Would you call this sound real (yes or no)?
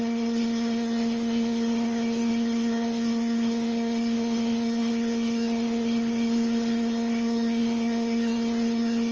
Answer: no